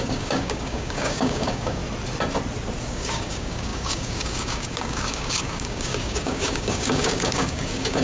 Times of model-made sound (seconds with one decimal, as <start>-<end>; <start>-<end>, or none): 0.0-1.8; 2.8-8.0

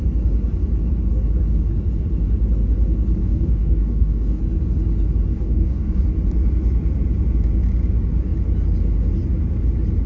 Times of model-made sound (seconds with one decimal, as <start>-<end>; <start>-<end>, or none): 3.2-4.4; 5.3-6.0

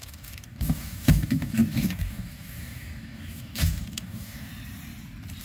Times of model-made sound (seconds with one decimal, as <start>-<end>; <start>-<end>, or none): 0.0-4.5

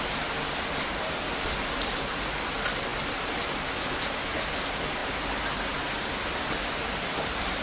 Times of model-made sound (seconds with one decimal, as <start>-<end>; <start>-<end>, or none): none